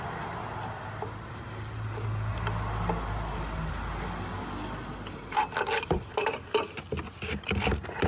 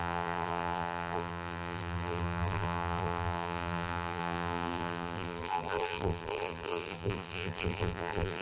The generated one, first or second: second